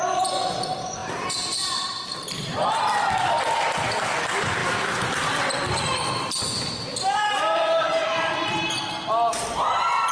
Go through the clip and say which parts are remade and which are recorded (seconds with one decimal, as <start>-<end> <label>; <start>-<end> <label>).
0.0-1.0 recorded; 1.0-3.4 remade; 3.4-4.6 recorded; 4.6-9.1 remade; 9.1-10.1 recorded